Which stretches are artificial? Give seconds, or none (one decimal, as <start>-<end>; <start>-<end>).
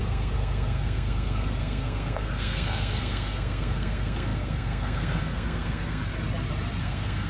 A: 0.0-6.0; 6.8-7.3